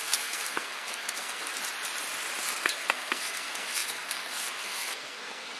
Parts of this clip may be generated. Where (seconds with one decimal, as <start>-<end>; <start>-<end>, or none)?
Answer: 0.0-1.5; 2.4-5.6